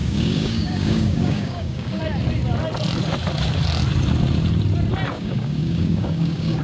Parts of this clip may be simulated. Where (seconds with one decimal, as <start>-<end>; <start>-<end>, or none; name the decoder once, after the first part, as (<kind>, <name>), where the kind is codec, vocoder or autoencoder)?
0.0-2.0 (codec, DAC); 5.1-6.6